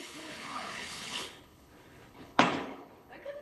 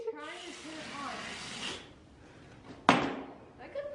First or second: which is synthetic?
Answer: first